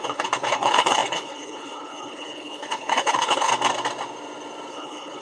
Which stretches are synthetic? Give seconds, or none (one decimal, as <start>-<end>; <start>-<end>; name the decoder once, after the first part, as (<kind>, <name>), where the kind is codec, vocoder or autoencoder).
0.0-3.5 (codec, HILCodec); 4.7-5.2